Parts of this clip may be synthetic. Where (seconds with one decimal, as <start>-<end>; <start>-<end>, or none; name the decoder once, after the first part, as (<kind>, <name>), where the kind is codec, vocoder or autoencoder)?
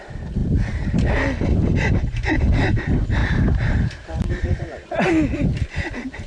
3.2-5.1 (vocoder, BigVGAN v2)